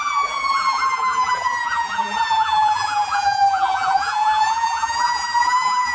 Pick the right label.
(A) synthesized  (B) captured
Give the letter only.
A